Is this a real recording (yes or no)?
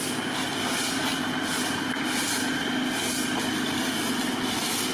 yes